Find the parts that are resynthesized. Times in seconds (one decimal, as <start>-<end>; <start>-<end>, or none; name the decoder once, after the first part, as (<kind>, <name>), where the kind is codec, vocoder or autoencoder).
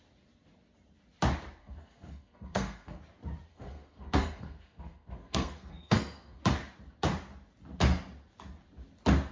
1.6-3.0 (codec, SNAC); 3.5-6.4